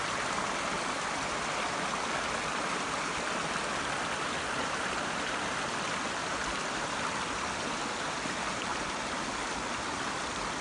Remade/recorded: recorded